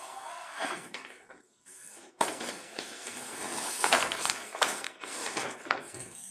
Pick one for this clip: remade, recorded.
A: remade